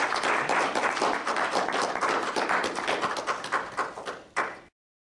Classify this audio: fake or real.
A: real